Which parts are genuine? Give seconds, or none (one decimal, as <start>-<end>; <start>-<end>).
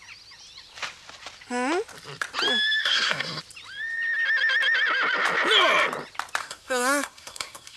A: 0.0-2.8; 3.4-6.4